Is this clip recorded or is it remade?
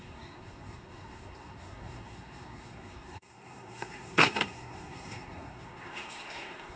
remade